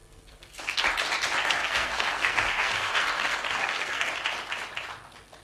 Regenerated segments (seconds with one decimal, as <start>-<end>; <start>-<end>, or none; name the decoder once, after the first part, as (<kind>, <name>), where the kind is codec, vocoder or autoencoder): 0.0-0.8 (codec, SNAC); 1.4-4.1